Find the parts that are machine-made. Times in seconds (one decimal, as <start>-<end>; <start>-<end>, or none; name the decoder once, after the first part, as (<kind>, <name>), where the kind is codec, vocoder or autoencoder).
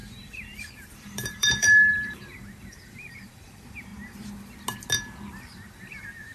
0.0-3.9 (vocoder, BigVGAN v2); 5.3-6.3